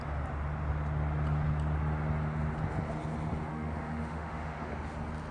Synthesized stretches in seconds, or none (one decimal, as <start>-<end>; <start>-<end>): 3.5-4.7